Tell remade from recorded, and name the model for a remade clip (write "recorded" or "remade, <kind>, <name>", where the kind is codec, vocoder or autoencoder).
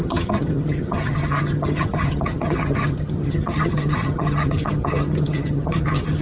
remade, vocoder, HiFi-GAN